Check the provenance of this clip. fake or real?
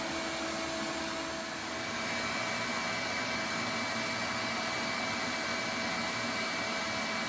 real